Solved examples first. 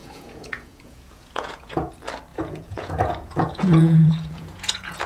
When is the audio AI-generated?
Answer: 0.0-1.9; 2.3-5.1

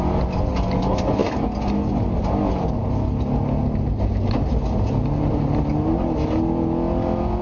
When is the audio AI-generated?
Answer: none

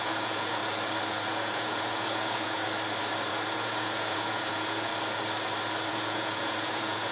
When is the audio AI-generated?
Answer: 0.0-0.6; 1.1-2.6; 3.3-4.9; 5.9-7.1